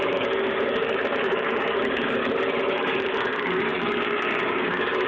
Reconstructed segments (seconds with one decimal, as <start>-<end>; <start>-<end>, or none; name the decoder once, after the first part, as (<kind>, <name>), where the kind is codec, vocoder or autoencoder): 0.0-2.2 (codec, DAC); 2.7-5.1